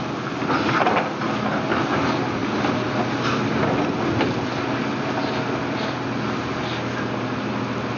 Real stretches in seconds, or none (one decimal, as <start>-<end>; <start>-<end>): 0.0-2.4; 3.5-8.0